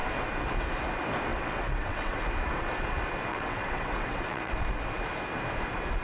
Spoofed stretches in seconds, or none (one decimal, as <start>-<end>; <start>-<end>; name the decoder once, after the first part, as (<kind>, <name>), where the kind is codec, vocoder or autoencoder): 1.3-2.2 (vocoder, WaveNeXt); 3.3-4.5